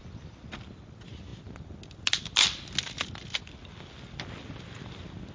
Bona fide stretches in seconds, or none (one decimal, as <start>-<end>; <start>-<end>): 0.0-5.3